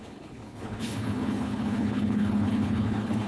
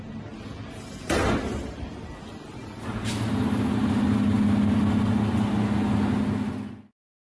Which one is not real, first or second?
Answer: first